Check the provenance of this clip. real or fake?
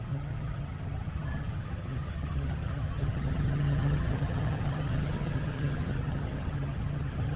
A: fake